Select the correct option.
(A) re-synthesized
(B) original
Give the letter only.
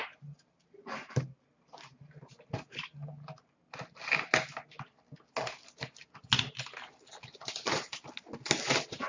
B